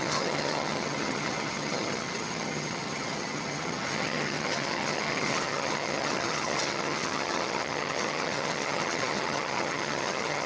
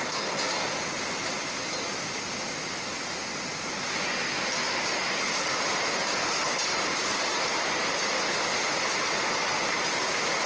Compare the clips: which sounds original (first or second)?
second